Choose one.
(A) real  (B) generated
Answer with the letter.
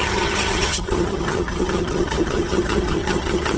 B